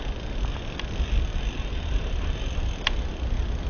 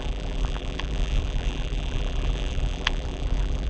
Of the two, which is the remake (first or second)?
second